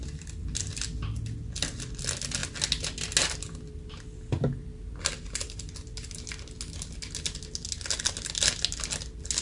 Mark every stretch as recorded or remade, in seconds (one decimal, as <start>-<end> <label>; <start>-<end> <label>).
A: 0.0-9.4 recorded